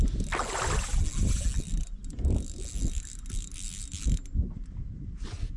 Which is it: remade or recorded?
recorded